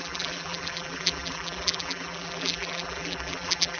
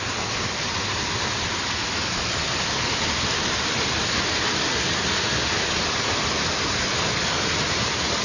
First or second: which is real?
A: second